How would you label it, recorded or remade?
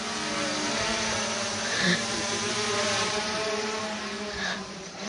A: remade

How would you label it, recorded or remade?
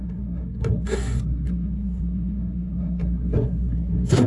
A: remade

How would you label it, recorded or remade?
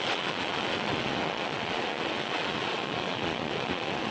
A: remade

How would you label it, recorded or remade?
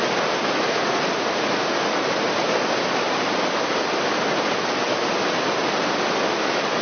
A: recorded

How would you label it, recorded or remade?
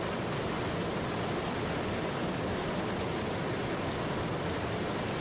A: recorded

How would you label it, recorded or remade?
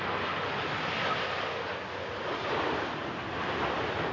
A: recorded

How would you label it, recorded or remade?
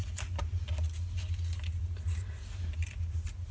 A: recorded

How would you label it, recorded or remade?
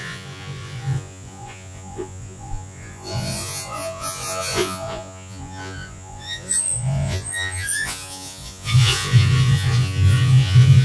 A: remade